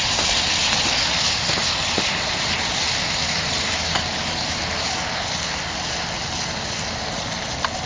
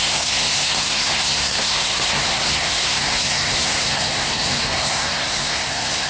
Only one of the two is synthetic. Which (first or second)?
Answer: second